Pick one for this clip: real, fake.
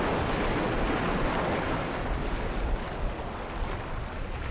real